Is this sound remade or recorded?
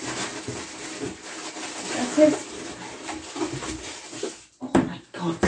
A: recorded